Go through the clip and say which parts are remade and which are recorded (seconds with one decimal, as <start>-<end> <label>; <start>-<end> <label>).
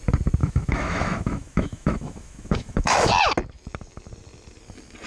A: 0.0-0.4 recorded; 0.4-3.1 remade; 3.1-5.1 recorded